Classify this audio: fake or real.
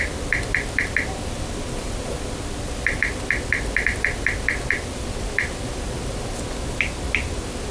real